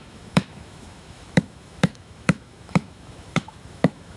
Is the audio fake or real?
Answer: fake